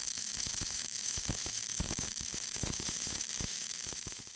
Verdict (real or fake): fake